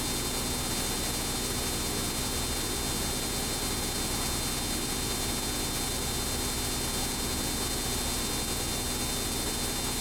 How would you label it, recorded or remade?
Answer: recorded